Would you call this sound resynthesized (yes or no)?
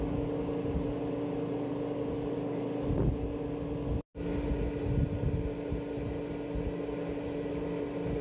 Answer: no